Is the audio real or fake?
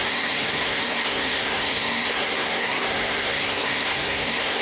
fake